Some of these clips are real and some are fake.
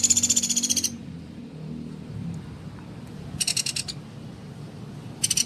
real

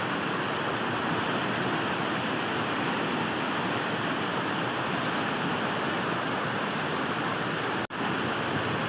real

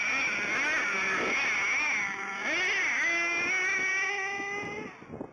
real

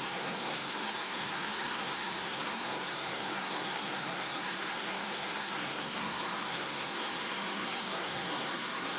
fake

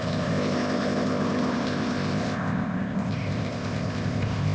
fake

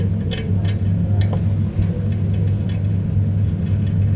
real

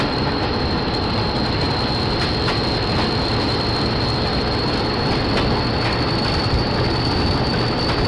real